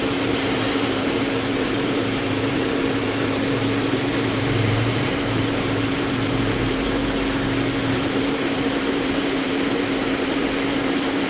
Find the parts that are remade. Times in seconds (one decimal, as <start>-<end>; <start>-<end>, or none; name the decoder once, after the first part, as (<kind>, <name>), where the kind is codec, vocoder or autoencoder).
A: 0.0-7.0 (vocoder, BigVGAN v2); 7.9-11.3